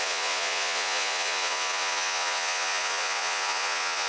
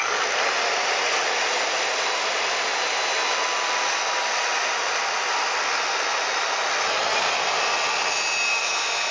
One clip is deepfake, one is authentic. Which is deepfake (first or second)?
first